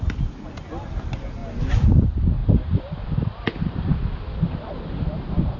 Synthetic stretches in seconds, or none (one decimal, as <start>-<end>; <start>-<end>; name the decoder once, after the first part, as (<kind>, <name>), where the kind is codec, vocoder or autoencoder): 2.4-5.6 (vocoder, BigVGAN v2)